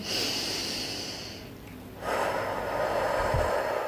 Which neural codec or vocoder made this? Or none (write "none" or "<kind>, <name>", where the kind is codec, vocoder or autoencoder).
none